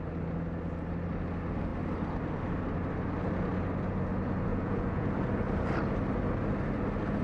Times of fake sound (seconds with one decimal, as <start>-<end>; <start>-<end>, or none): 4.5-5.1